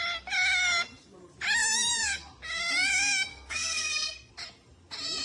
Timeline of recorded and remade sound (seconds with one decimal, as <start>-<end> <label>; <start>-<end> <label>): 0.0-3.3 recorded; 3.3-4.3 remade; 4.3-5.2 recorded